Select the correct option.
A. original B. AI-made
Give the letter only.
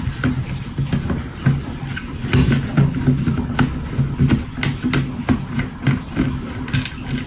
A